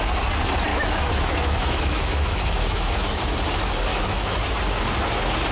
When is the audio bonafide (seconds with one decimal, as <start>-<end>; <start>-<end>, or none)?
0.0-0.7; 3.2-3.9; 4.4-5.5